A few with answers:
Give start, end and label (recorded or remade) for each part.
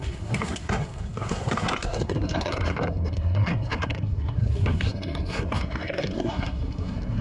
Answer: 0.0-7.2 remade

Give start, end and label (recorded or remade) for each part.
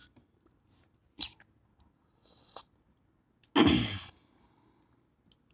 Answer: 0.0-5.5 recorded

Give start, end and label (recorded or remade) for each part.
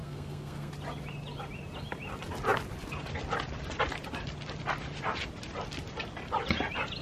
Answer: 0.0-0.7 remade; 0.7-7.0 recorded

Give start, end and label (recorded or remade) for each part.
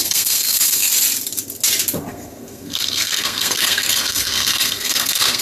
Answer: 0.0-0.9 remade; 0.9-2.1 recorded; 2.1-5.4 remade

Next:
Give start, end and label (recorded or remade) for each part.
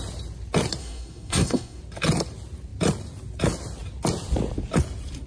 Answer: 0.0-0.8 recorded; 0.8-1.8 remade; 1.8-5.3 recorded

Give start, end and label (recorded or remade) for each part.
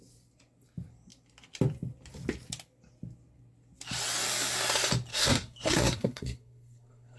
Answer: 0.0-5.1 recorded; 5.1-7.2 remade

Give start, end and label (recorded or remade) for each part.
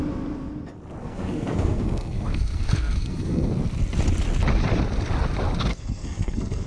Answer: 0.0-1.0 recorded; 1.0-3.5 remade; 3.5-5.7 recorded; 5.7-6.7 remade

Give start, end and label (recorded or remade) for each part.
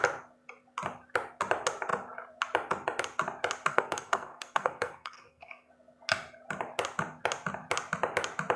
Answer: 0.0-3.7 recorded; 3.7-5.7 remade; 5.7-8.6 recorded